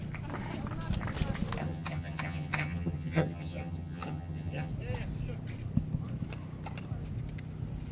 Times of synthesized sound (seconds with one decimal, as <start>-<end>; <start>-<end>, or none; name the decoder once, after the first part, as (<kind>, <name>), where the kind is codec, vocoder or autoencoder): 1.6-4.7 (vocoder, HiFi-GAN)